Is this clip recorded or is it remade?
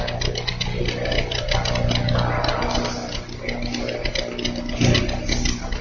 recorded